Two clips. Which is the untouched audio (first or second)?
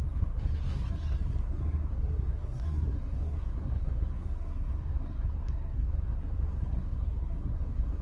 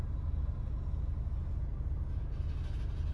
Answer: second